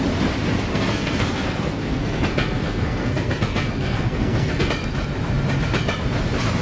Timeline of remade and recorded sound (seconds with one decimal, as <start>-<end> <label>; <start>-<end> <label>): 0.0-0.7 recorded; 0.7-4.7 remade; 4.7-6.6 recorded

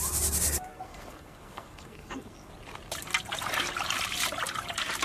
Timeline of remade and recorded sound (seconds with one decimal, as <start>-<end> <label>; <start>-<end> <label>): 0.0-0.7 recorded; 0.7-2.5 remade; 2.5-5.0 recorded

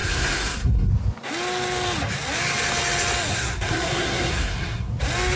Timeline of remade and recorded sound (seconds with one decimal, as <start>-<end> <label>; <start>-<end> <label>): 0.0-0.9 remade; 0.9-3.3 recorded; 3.3-4.9 remade; 4.9-5.4 recorded

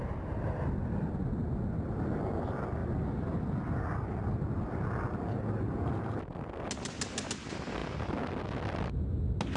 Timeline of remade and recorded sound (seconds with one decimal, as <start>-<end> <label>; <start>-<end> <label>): 0.0-9.6 recorded

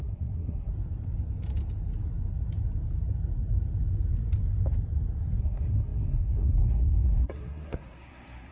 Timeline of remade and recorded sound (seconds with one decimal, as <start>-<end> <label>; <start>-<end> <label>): 0.0-0.7 remade; 0.7-5.4 recorded; 5.4-8.5 remade

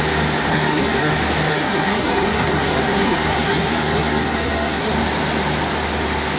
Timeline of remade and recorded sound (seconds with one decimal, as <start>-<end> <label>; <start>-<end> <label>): 0.0-0.5 recorded; 0.5-1.1 remade; 1.1-1.5 recorded; 1.5-4.9 remade; 4.9-6.4 recorded